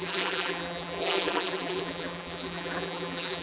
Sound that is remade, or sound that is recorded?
remade